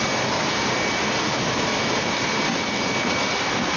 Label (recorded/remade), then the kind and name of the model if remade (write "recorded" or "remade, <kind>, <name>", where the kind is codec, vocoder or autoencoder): recorded